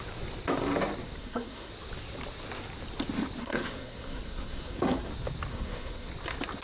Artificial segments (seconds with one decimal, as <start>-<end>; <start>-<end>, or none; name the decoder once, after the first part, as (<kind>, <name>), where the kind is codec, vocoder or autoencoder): 1.2-1.7 (codec, SNAC); 3.4-5.1; 5.5-6.1